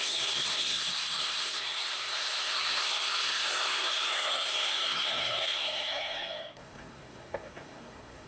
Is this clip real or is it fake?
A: fake